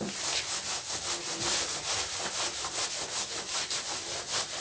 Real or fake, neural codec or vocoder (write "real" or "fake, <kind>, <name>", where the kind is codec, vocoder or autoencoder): real